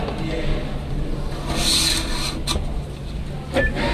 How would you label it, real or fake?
real